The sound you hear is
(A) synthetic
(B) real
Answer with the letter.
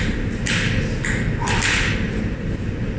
B